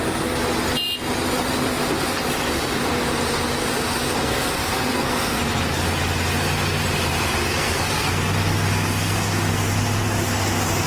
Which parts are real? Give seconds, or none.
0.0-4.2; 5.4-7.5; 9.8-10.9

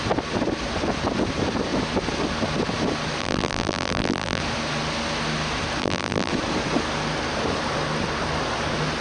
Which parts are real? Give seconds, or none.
0.0-3.2; 4.4-5.8; 6.3-9.0

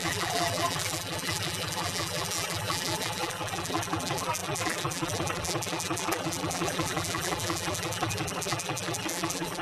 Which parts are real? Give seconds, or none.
none